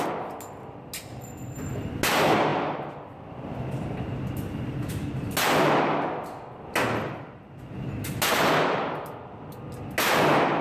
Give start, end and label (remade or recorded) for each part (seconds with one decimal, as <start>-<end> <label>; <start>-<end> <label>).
0.0-10.6 recorded